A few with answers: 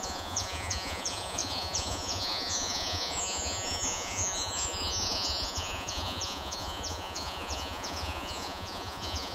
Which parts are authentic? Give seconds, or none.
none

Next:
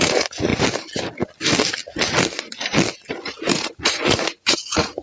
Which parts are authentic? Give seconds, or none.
0.5-3.1

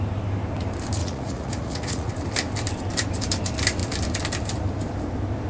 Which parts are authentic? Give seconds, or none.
0.0-1.0; 2.1-5.5

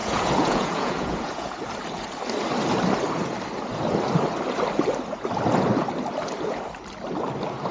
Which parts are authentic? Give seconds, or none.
1.5-7.7

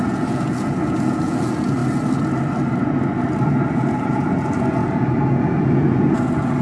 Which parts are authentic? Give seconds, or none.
1.8-3.7